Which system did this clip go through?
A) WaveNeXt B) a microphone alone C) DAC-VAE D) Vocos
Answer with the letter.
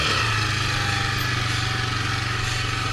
B